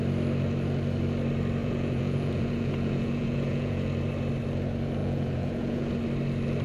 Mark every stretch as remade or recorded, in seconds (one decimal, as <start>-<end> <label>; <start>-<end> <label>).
0.0-1.6 recorded; 1.6-3.9 remade; 3.9-5.0 recorded; 5.0-5.9 remade; 5.9-6.6 recorded